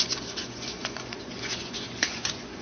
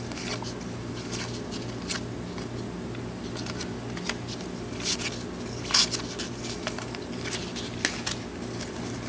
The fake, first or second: first